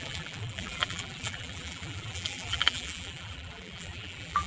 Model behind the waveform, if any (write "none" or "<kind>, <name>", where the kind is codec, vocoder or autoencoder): vocoder, BigVGAN v2